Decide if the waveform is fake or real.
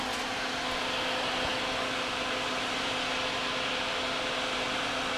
real